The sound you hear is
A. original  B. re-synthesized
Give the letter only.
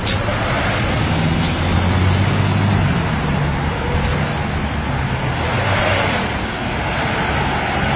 A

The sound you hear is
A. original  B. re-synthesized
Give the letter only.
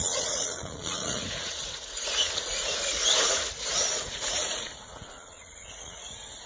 B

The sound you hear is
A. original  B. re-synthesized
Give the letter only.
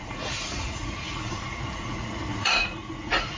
B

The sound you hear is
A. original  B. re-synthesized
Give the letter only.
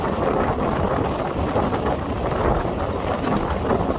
A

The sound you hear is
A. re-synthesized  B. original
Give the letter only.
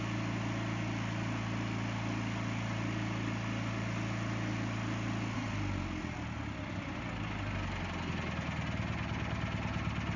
B